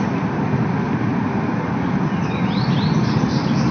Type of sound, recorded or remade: recorded